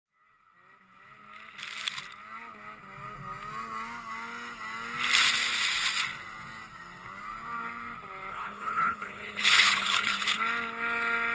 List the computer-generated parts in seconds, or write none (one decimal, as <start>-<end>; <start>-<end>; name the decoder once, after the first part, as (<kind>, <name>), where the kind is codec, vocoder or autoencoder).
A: 8.3-10.4 (codec, HILCodec)